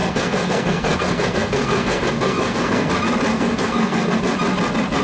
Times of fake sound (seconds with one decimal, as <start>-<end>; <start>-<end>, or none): 0.0-2.9; 3.3-4.2